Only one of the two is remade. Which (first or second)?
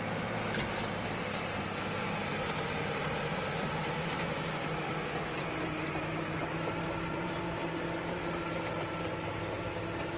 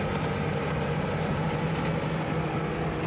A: first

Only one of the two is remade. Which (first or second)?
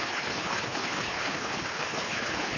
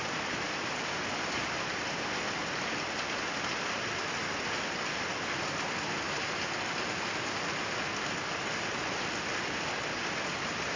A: first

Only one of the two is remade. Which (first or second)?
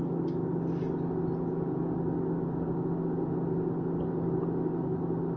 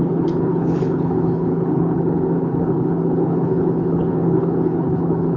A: second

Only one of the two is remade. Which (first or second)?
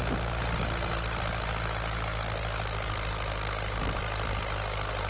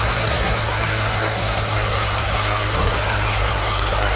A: second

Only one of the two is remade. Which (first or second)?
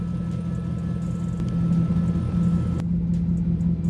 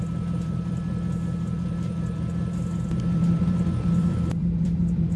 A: second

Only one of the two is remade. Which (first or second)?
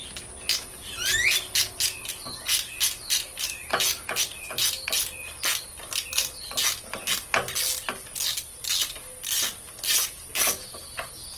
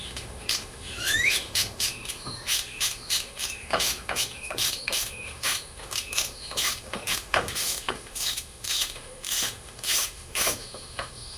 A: second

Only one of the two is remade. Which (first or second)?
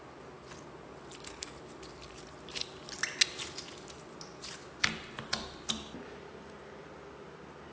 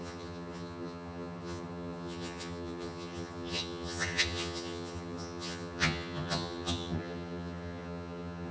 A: second